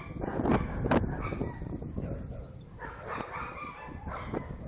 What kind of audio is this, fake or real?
real